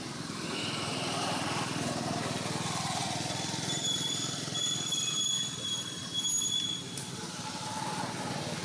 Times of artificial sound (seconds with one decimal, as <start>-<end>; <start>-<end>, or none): none